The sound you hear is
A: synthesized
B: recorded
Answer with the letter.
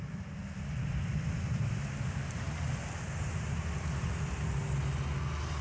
B